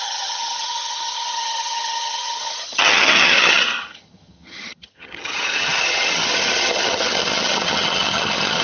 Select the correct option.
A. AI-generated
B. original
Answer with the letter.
A